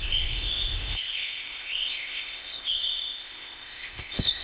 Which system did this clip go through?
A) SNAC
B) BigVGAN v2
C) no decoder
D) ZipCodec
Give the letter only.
D